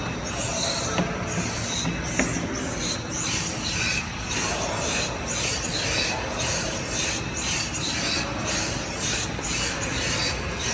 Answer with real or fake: real